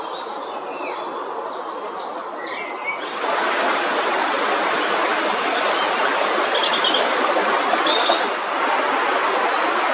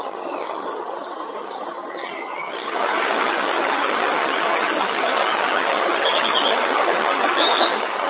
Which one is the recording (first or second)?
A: first